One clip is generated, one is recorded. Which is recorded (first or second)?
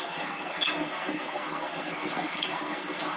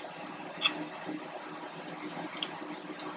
second